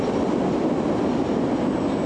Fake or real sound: real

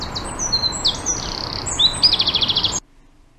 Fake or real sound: real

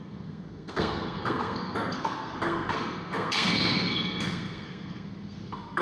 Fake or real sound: fake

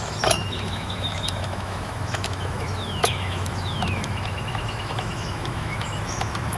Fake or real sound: fake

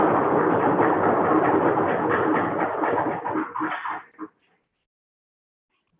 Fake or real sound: real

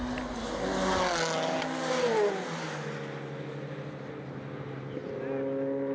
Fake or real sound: real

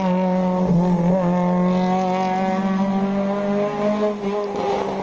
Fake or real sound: real